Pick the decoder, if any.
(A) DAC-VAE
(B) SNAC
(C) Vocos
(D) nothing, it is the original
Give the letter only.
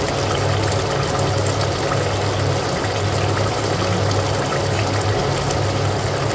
D